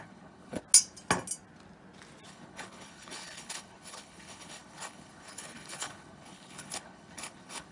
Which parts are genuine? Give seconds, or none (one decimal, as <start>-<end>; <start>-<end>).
0.6-2.3